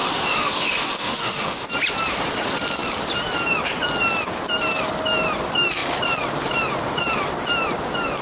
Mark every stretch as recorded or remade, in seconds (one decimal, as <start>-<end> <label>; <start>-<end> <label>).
0.0-1.6 remade; 1.6-8.2 recorded